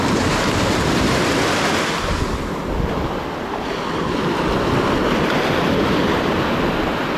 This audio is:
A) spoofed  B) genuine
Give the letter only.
B